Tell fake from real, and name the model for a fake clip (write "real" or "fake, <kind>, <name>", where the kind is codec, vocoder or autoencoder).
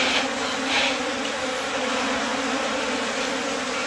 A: fake, vocoder, BigVGAN v2